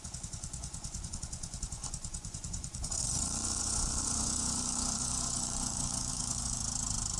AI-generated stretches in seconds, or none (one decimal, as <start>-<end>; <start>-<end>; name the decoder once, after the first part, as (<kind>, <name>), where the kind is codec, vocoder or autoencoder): 0.0-6.6 (vocoder, Vocos)